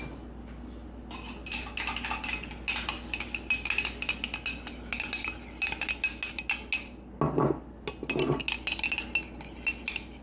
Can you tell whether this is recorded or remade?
recorded